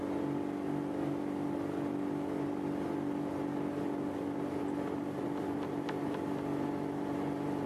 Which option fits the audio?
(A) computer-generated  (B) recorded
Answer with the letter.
B